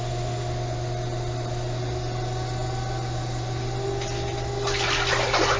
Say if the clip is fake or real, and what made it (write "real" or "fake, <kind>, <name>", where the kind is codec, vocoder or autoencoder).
real